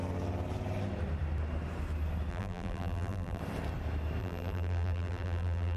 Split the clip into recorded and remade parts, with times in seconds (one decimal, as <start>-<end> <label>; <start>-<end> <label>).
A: 0.0-2.3 recorded; 2.3-3.4 remade; 3.4-4.2 recorded; 4.2-5.8 remade